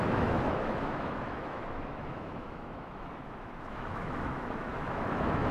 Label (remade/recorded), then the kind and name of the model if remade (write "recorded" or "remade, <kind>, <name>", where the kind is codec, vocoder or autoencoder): remade, autoencoder, DAC-VAE